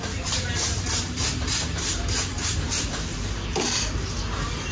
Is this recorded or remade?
remade